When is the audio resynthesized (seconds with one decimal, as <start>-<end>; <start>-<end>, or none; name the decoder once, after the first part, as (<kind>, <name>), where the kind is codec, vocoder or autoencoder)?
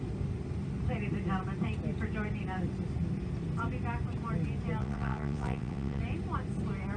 4.8-6.0 (vocoder, WaveNeXt)